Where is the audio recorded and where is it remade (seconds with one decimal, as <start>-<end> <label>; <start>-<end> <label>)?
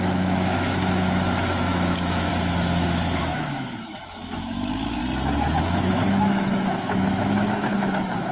0.0-2.3 remade; 2.3-3.2 recorded; 3.2-5.0 remade; 5.0-5.6 recorded; 5.6-8.3 remade